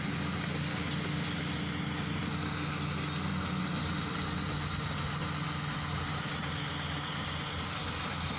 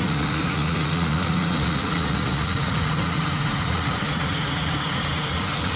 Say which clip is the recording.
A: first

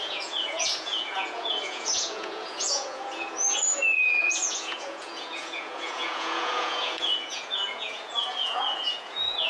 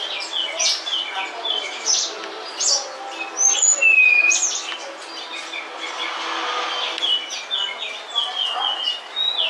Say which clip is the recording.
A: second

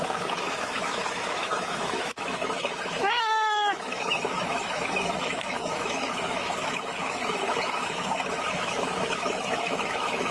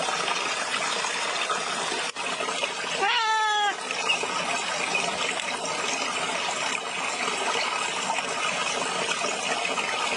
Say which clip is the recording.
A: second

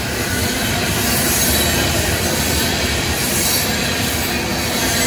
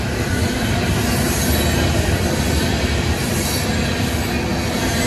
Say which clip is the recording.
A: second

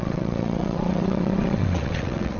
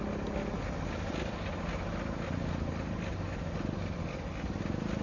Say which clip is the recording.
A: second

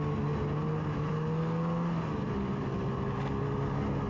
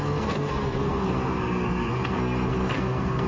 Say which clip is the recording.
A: first